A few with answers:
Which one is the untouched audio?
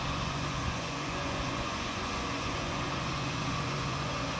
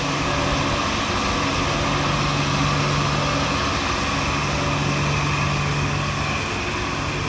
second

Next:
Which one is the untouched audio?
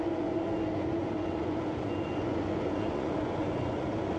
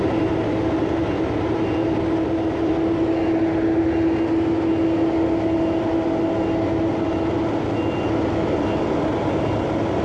second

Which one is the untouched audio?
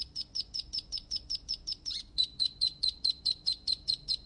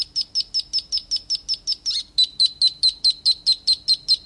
second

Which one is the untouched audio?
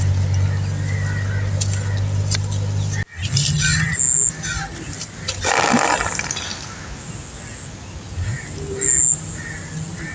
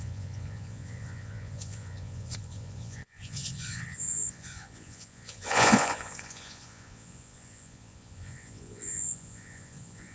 first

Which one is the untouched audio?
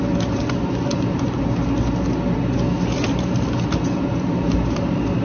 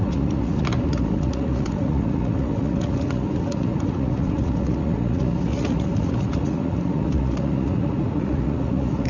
first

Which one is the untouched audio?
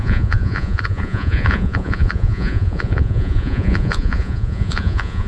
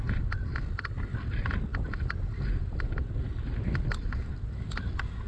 second